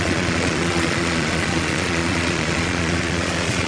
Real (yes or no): no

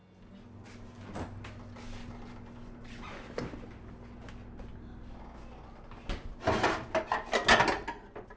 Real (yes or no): yes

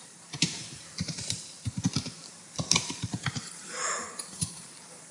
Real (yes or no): no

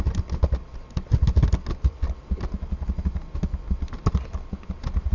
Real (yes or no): yes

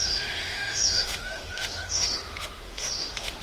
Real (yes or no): no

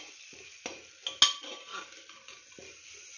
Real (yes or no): yes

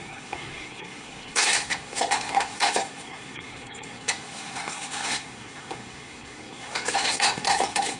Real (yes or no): no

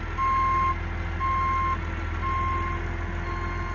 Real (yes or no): yes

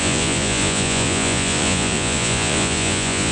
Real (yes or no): no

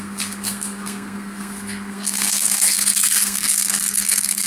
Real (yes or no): no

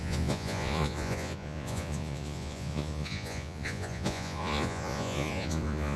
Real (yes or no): no